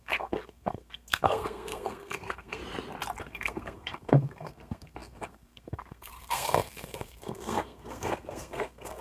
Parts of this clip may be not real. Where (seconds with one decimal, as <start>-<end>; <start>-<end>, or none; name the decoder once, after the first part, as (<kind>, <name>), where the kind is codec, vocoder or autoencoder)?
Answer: 0.0-2.6 (codec, SNAC); 3.2-9.0